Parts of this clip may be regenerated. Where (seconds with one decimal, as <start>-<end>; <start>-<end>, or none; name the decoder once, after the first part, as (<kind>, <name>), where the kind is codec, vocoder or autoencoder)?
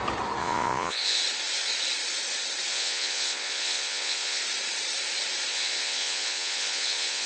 0.4-1.2 (vocoder, Vocos); 2.7-4.4; 5.5-7.3